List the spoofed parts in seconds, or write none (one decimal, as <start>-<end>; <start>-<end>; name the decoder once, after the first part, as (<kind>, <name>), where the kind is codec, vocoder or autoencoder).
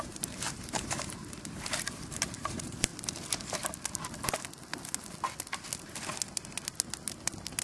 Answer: 0.0-2.9 (vocoder, BigVGAN v2)